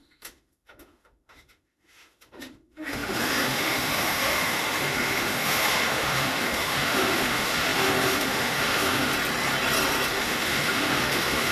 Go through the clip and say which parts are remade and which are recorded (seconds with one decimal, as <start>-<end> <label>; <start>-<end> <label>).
0.0-9.1 remade; 9.1-10.1 recorded; 10.1-11.5 remade